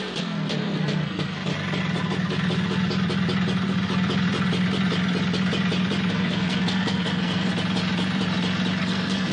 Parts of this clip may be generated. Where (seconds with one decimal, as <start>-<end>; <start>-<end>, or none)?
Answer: 0.0-1.5; 6.1-7.5; 8.8-9.3